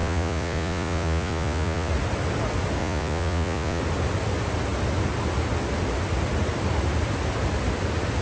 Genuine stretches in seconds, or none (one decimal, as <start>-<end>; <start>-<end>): 1.9-2.8; 3.8-8.2